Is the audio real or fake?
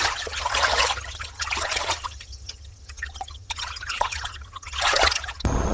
fake